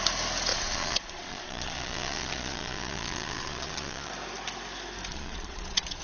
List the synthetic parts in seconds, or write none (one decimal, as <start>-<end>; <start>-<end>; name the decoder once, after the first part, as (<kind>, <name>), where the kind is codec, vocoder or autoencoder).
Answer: 0.5-4.1 (vocoder, Vocos); 5.1-6.0